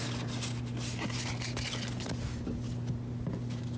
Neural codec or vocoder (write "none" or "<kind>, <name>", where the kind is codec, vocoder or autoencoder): none